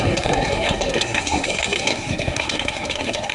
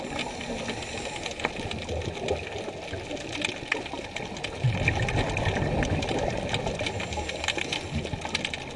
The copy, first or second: first